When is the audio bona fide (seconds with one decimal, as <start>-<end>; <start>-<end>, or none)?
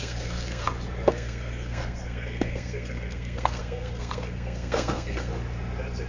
0.6-1.1; 5.3-6.1